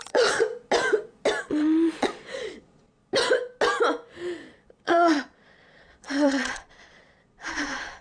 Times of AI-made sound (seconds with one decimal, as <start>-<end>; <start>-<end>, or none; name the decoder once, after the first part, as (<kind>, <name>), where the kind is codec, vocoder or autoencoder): 0.0-0.5 (vocoder, Vocos); 1.4-3.0; 4.8-8.0

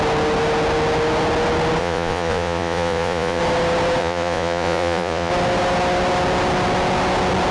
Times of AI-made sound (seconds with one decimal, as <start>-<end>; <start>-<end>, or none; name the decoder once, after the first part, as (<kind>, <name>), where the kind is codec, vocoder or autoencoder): 1.8-3.4 (vocoder, Vocos); 4.0-5.3

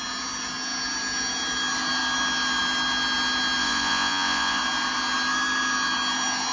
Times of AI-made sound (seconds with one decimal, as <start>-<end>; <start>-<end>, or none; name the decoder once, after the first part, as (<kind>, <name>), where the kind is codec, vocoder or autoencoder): 3.6-4.6 (vocoder, Vocos)

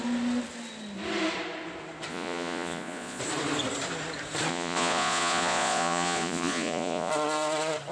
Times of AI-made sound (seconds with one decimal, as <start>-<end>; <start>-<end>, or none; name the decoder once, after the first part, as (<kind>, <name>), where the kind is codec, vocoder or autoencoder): 2.1-3.2 (vocoder, Vocos); 4.5-7.1

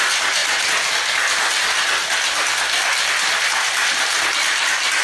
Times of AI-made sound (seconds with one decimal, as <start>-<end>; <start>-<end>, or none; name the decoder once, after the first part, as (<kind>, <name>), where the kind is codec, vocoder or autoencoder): none